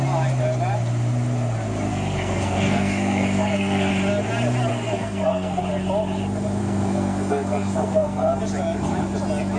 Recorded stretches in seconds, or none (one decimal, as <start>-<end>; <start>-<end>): 0.0-1.9; 3.9-4.7; 5.6-6.6; 8.4-9.6